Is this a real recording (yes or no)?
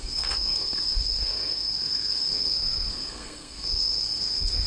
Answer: no